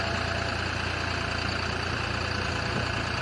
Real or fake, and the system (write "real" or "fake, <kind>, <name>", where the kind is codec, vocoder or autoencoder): real